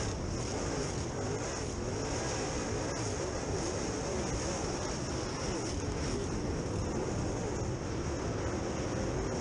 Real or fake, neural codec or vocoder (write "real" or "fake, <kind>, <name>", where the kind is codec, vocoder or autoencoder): real